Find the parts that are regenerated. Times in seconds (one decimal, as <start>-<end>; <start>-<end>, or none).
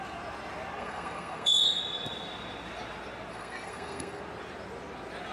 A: 0.8-1.8; 3.3-4.2